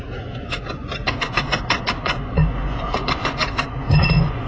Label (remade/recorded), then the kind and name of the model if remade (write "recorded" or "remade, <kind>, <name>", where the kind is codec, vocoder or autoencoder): remade, vocoder, Vocos